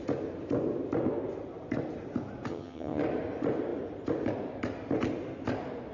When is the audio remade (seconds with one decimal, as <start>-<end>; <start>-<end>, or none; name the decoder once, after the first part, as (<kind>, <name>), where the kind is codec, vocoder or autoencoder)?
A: 2.5-3.0 (vocoder, HiFi-GAN)